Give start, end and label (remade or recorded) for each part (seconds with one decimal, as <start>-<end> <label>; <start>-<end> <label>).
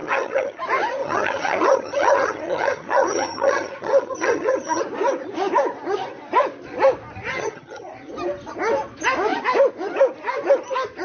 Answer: 0.0-0.6 remade; 0.6-1.0 recorded; 1.0-4.8 remade; 4.8-7.3 recorded; 7.3-7.9 remade; 7.9-11.0 recorded